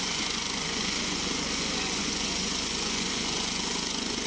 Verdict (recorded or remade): remade